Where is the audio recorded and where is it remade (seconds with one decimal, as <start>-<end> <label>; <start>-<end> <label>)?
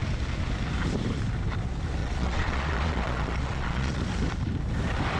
0.0-2.0 recorded; 2.0-4.0 remade; 4.0-5.2 recorded